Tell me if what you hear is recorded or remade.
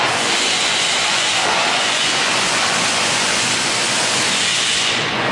remade